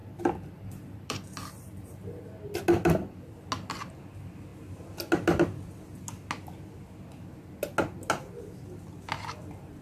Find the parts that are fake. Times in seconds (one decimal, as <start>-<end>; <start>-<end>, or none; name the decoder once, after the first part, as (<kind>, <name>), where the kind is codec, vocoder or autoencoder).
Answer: 0.0-2.2 (vocoder, BigVGAN v2)